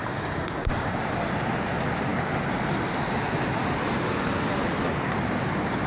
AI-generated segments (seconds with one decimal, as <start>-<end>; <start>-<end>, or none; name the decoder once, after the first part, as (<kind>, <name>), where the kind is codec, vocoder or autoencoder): 0.0-1.0 (codec, DAC)